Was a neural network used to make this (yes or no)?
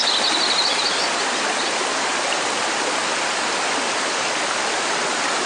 no